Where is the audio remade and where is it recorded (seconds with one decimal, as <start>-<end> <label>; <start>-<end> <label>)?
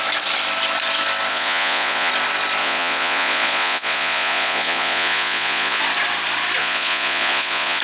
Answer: 0.0-1.3 recorded; 1.3-2.1 remade; 2.1-2.6 recorded; 2.6-5.8 remade; 5.8-6.6 recorded; 6.6-7.8 remade